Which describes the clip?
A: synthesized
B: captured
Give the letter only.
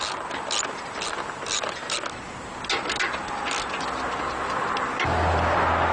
B